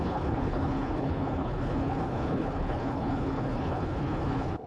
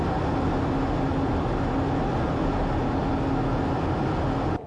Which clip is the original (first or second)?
second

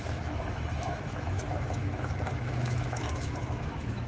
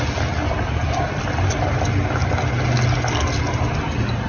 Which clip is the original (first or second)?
second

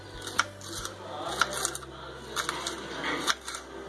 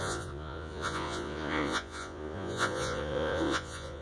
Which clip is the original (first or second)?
first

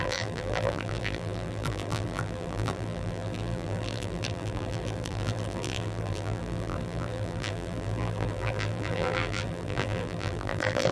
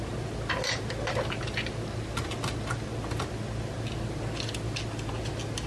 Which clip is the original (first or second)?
second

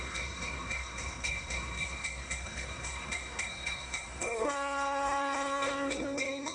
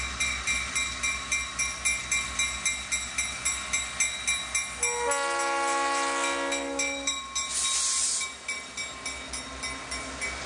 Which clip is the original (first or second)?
second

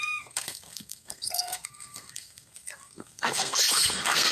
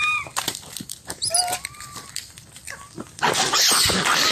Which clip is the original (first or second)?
second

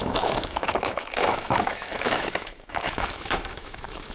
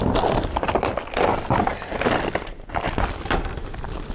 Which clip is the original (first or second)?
second